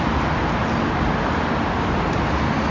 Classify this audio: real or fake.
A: real